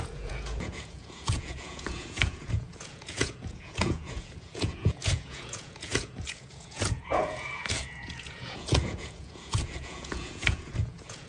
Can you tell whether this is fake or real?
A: fake